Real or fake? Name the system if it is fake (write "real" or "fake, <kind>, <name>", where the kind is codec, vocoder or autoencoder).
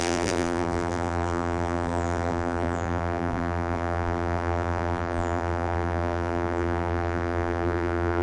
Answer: fake, vocoder, BigVGAN v2